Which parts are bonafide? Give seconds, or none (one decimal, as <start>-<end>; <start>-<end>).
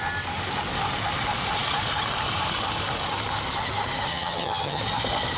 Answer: 0.0-4.1; 4.8-5.4